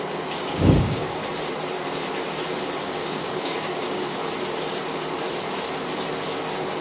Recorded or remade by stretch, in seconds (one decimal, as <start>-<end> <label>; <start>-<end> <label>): 0.0-1.2 remade; 1.2-2.8 recorded; 2.8-4.2 remade; 4.2-6.8 recorded